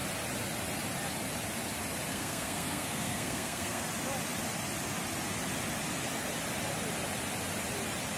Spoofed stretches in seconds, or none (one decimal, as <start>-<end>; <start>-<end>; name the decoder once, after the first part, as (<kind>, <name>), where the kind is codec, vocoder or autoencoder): 2.1-3.8 (codec, SNAC)

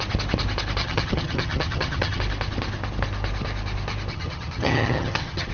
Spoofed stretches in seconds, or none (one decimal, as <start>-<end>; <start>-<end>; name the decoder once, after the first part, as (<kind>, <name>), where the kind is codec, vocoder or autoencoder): 0.8-2.2 (vocoder, HiFi-GAN); 4.1-5.5